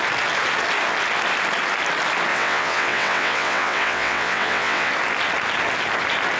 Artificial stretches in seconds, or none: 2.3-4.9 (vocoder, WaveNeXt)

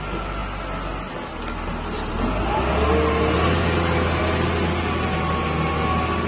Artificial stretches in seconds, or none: none

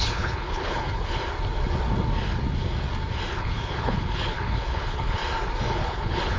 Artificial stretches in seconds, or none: 0.0-1.2 (codec, HILCodec); 3.4-5.2; 5.7-6.4

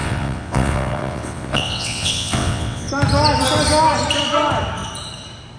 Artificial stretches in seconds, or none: 0.0-2.9 (vocoder, WaveNeXt)

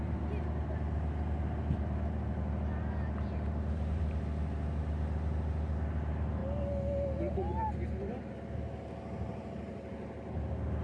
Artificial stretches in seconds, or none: none

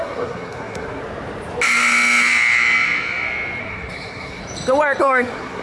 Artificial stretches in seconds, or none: 0.0-1.0 (codec, SNAC); 3.6-4.4; 5.0-5.6